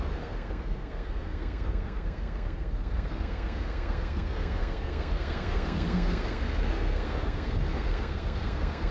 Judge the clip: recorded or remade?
remade